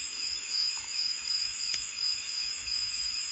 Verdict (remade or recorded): remade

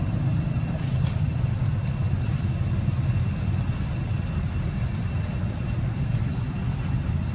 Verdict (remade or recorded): recorded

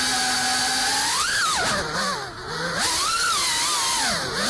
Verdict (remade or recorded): recorded